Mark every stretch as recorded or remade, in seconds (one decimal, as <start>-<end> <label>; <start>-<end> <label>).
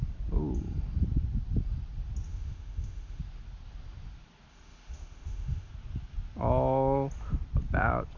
0.0-2.3 recorded; 2.3-3.2 remade; 3.2-4.5 recorded; 4.5-5.7 remade; 5.7-8.2 recorded